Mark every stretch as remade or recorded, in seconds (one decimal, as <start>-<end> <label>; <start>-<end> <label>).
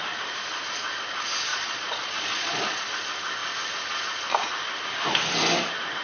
0.0-1.5 recorded; 1.5-2.9 remade; 2.9-6.0 recorded